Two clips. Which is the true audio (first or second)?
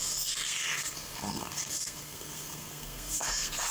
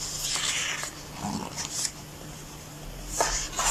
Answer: second